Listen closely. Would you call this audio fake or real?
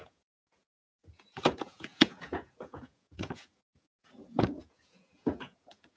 fake